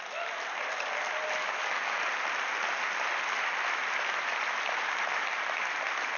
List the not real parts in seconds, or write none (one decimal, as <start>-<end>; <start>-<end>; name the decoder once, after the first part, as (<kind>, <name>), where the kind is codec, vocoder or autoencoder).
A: 1.4-2.0 (codec, DAC)